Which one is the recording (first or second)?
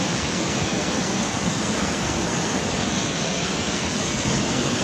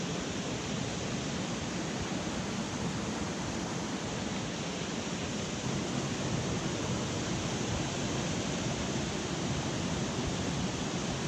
second